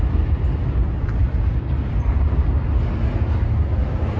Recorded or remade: recorded